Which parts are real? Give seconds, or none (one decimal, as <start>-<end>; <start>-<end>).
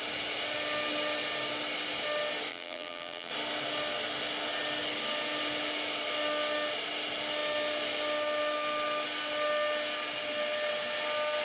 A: 0.0-2.5; 3.3-11.4